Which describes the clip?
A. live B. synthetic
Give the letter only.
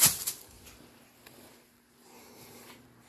A